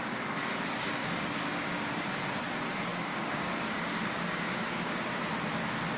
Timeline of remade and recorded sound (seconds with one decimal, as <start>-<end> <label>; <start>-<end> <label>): 0.0-1.0 recorded; 1.0-1.8 remade; 1.8-2.9 recorded; 2.9-3.5 remade; 3.5-3.9 recorded; 3.9-5.1 remade; 5.1-6.0 recorded